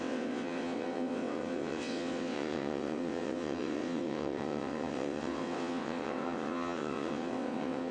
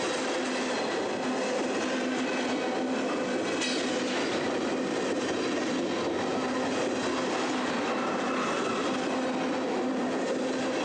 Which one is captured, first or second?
second